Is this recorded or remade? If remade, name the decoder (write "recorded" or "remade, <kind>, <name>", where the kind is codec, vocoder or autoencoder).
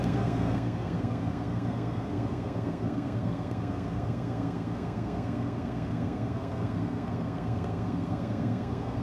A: remade, codec, SNAC